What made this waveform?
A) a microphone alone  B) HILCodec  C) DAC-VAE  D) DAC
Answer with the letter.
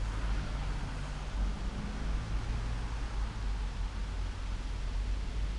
A